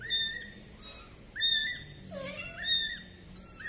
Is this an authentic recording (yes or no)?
yes